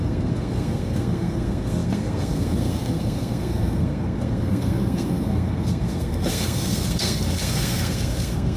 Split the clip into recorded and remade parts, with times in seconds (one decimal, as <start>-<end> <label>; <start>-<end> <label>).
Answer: 0.0-8.6 remade